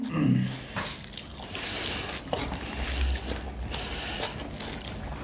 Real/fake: real